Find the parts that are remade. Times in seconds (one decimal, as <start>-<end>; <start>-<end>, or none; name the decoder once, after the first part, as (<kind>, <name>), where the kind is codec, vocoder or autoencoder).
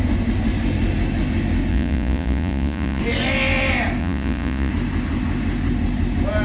1.7-3.0 (vocoder, Vocos); 4.0-4.7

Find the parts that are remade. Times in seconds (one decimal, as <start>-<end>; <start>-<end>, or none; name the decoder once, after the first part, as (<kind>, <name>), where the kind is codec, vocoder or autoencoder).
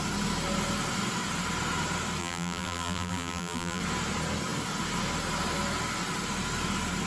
2.2-3.8 (vocoder, BigVGAN v2)